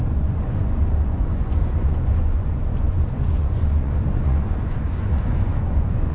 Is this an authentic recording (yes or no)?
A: no